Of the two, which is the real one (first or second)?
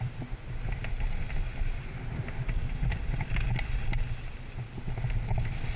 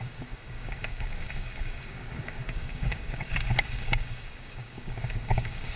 first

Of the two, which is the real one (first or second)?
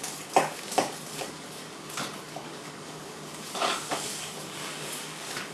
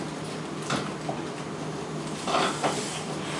second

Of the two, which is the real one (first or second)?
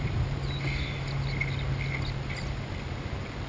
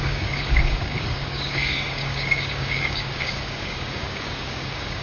first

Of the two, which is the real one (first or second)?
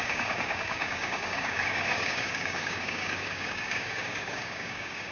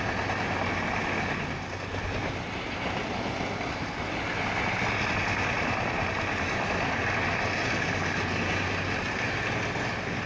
second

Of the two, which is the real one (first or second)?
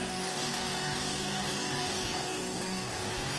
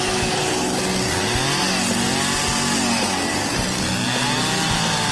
second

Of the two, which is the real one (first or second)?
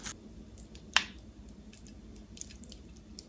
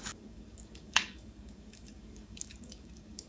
first